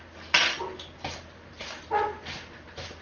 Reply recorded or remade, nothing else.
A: recorded